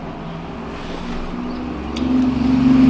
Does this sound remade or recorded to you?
recorded